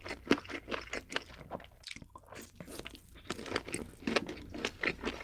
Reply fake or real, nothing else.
real